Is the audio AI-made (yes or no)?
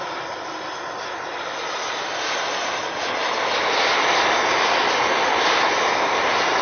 no